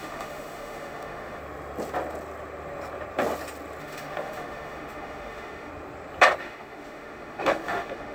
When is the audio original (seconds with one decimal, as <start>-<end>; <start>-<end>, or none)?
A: 1.4-3.8; 5.7-6.4